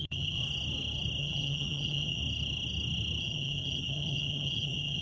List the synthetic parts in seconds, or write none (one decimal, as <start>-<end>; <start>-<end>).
0.0-0.4; 1.2-2.2; 3.2-5.0